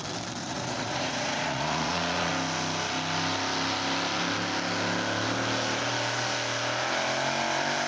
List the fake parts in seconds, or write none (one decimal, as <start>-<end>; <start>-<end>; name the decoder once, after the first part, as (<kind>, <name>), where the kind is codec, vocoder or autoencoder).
0.4-2.3 (vocoder, Vocos)